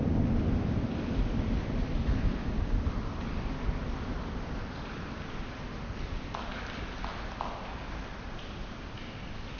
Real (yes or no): yes